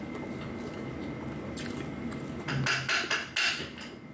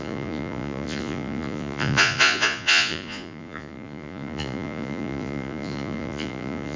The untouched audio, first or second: first